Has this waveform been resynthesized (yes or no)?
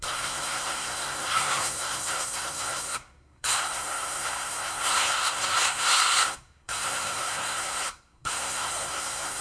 yes